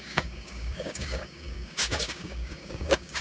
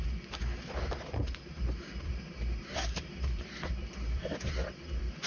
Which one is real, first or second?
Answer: second